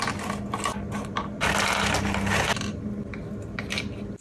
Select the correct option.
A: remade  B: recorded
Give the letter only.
B